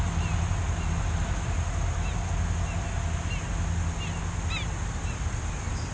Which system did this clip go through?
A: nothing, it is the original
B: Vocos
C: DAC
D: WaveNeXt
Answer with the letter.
A